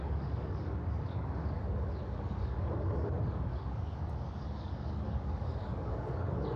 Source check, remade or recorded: remade